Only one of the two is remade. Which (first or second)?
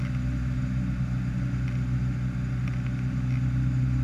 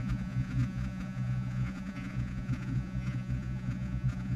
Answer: second